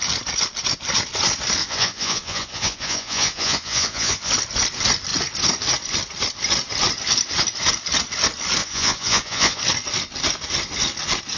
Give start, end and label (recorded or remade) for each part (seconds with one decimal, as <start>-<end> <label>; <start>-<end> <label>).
0.0-1.6 recorded; 1.6-4.3 remade; 4.3-8.6 recorded; 8.6-9.6 remade; 9.6-11.4 recorded